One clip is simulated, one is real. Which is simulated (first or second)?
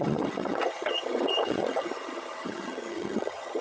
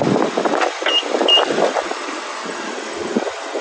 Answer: first